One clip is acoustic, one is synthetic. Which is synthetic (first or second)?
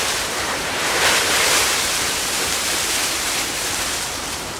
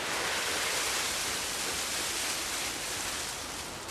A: first